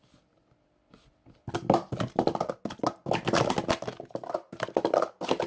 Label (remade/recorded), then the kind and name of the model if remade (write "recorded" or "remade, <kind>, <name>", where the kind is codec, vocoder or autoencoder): recorded